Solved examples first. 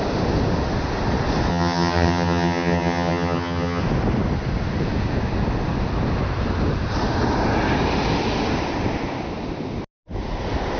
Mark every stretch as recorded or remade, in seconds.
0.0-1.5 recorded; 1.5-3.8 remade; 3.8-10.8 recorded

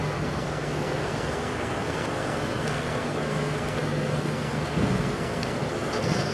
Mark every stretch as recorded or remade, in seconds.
0.0-6.3 remade

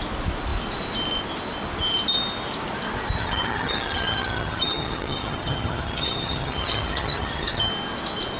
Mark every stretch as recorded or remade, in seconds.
0.0-3.2 recorded; 3.2-7.7 remade; 7.7-8.4 recorded

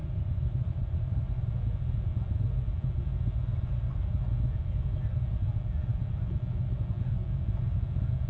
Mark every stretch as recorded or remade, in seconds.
0.0-1.5 remade; 1.5-8.3 recorded

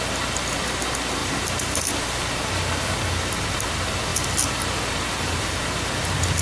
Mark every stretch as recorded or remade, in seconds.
0.0-1.2 recorded; 1.2-1.9 remade; 1.9-6.4 recorded

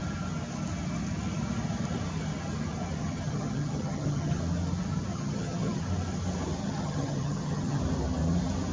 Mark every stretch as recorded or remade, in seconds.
0.0-3.0 recorded; 3.0-4.4 remade; 4.4-5.1 recorded; 5.1-5.8 remade; 5.8-6.6 recorded; 6.6-7.8 remade; 7.8-8.7 recorded

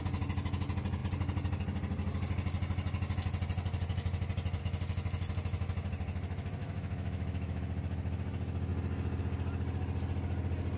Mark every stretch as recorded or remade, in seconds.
0.0-6.6 recorded; 6.6-7.6 remade; 7.6-10.8 recorded